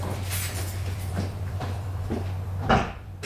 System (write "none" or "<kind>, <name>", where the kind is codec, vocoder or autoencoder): vocoder, BigVGAN v2